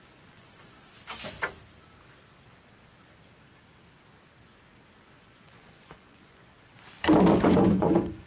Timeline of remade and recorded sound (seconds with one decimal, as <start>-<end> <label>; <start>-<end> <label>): 0.0-0.9 remade; 0.9-5.2 recorded; 5.2-6.5 remade; 6.5-7.4 recorded; 7.4-8.3 remade